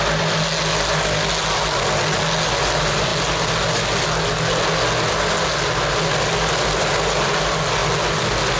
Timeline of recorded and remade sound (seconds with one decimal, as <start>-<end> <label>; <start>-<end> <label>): 0.0-8.6 recorded